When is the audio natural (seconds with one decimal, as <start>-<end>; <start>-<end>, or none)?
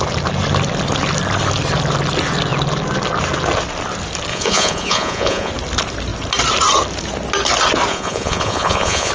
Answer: 0.0-4.3; 5.5-7.9